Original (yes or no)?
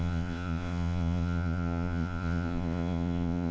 no